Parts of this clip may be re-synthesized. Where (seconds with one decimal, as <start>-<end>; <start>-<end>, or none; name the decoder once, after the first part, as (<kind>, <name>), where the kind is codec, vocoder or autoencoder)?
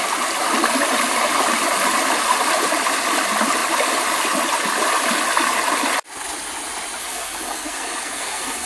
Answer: 7.0-8.7 (codec, SNAC)